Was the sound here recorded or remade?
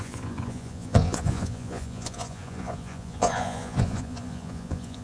remade